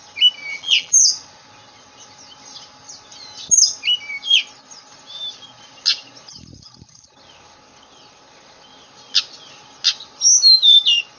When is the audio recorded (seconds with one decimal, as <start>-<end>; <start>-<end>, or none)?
0.0-0.5; 1.1-11.2